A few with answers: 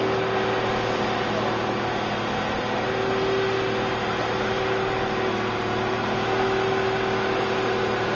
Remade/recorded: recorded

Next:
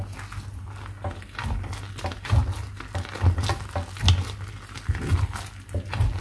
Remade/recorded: recorded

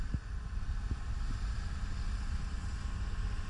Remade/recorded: recorded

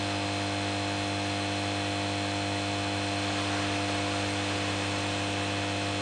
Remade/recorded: recorded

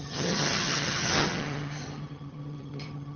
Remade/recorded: remade